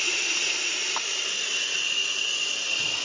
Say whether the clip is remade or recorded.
recorded